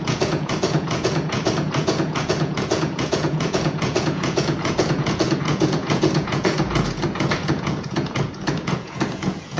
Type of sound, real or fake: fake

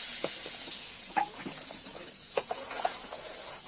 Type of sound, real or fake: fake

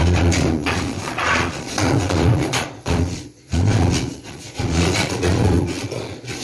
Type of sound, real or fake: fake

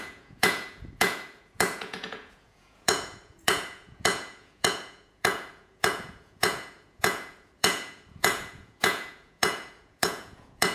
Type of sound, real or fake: fake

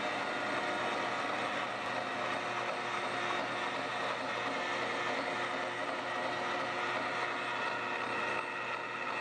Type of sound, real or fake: real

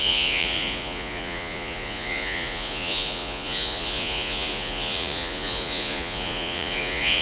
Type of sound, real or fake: fake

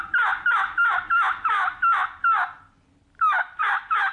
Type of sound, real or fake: real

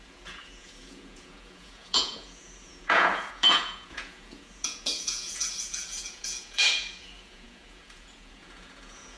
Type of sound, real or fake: fake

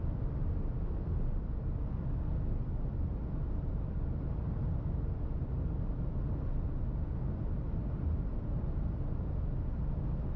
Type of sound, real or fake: real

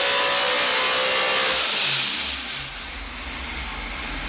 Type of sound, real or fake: real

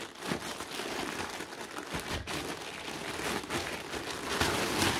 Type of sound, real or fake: real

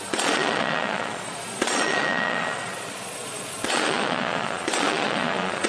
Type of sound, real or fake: fake